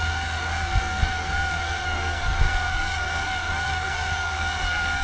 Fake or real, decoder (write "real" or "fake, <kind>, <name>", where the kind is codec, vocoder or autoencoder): fake, codec, SNAC